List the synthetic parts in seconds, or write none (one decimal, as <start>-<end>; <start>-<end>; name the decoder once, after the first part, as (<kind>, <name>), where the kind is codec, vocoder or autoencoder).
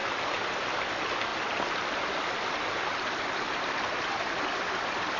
1.3-4.4 (vocoder, BigVGAN v2)